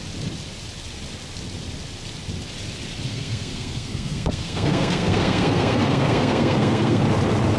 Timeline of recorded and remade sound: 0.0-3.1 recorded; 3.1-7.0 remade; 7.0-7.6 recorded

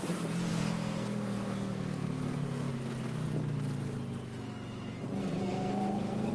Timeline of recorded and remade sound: 0.0-0.5 recorded; 0.5-2.7 remade; 2.7-5.2 recorded; 5.2-6.3 remade

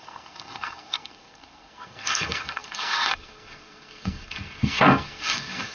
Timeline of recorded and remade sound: 0.0-5.7 remade